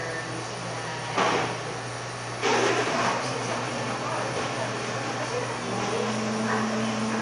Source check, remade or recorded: recorded